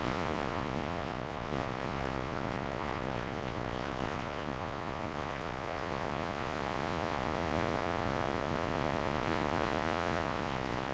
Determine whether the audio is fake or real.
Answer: fake